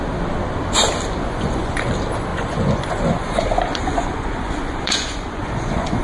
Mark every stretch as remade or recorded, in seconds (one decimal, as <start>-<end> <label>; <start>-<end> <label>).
0.0-1.2 recorded; 1.2-1.9 remade; 1.9-2.3 recorded; 2.3-6.0 remade